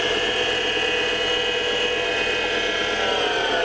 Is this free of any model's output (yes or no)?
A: yes